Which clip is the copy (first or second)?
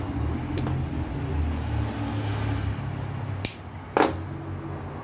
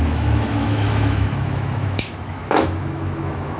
second